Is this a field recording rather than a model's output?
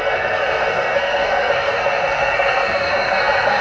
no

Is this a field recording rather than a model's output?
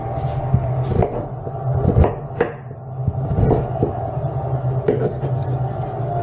yes